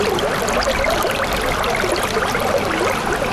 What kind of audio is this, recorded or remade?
recorded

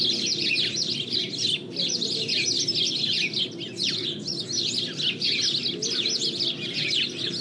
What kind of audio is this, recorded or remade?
recorded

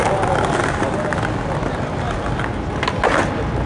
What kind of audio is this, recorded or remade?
recorded